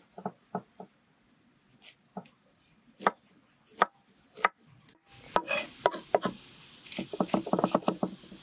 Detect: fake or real real